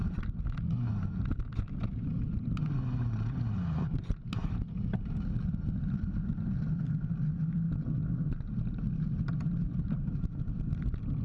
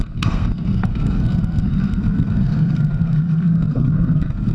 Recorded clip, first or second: first